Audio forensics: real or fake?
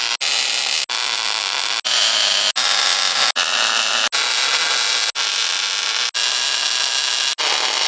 real